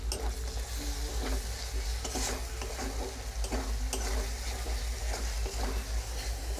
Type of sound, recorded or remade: recorded